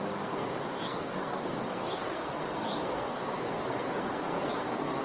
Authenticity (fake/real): fake